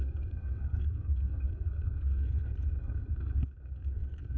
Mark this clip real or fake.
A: fake